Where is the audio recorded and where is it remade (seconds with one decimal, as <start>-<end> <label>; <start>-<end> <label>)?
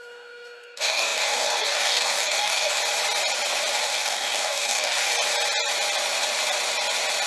0.0-2.8 remade; 2.8-3.8 recorded; 3.8-5.1 remade; 5.1-7.3 recorded